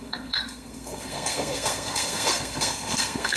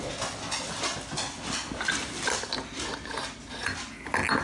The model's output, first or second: first